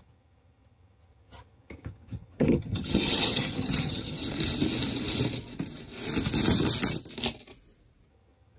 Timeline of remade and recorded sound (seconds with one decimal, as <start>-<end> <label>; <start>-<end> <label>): 0.0-4.2 remade; 4.2-8.1 recorded; 8.1-8.6 remade